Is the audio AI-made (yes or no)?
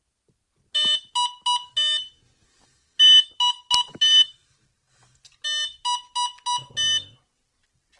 no